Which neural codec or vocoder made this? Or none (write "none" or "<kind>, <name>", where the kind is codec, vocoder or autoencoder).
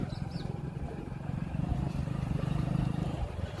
vocoder, BigVGAN v2